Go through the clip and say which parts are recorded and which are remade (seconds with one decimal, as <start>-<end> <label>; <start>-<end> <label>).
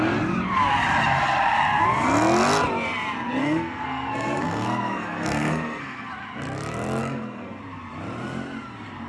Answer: 0.0-3.4 recorded; 3.4-6.1 remade; 6.1-7.0 recorded; 7.0-7.6 remade; 7.6-9.1 recorded